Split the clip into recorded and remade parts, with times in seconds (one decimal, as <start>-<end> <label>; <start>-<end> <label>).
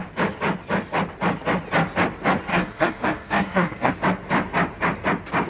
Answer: 0.0-2.5 recorded; 2.5-3.9 remade; 3.9-5.5 recorded